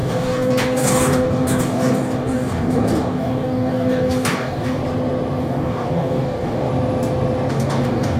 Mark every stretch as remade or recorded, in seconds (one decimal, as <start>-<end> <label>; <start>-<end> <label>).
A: 0.0-4.8 remade; 4.8-5.4 recorded; 5.4-6.7 remade; 6.7-7.5 recorded; 7.5-8.2 remade